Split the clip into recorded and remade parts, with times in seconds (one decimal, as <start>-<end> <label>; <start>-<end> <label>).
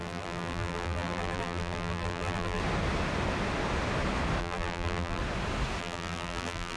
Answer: 0.0-2.6 remade; 2.6-4.4 recorded; 4.4-5.2 remade; 5.2-5.8 recorded; 5.8-6.8 remade